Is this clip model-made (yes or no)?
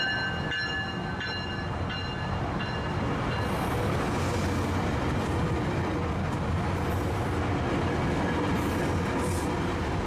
no